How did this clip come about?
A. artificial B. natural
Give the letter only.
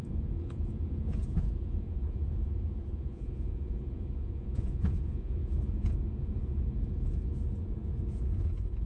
A